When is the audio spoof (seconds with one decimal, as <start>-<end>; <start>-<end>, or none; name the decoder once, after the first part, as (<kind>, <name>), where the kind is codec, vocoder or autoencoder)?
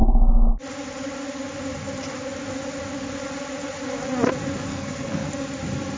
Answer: 4.7-5.3 (codec, SNAC)